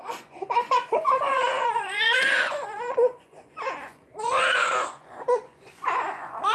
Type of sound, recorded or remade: remade